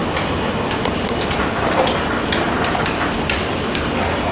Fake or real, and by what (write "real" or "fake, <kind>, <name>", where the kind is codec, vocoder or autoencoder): real